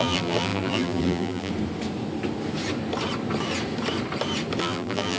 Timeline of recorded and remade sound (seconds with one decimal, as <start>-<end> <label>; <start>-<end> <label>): 0.0-1.5 remade; 1.5-4.6 recorded; 4.6-5.2 remade